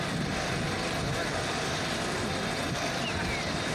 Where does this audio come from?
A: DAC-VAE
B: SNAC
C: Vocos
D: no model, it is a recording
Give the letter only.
D